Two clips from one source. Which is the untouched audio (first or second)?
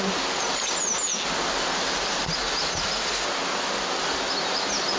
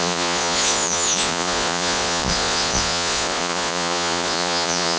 first